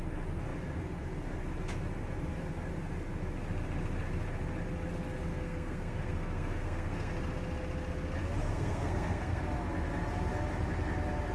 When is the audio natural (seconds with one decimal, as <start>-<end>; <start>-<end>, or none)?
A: 0.0-5.3; 7.1-8.5; 9.4-11.3